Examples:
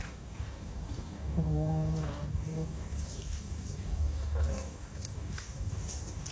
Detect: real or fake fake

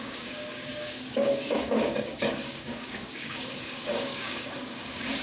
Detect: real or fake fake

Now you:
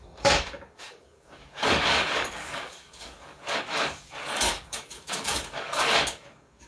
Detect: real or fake fake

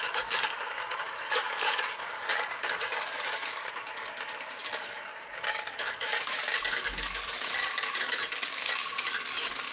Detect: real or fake fake